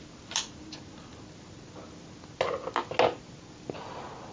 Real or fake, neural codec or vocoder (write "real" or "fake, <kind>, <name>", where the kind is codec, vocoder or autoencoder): real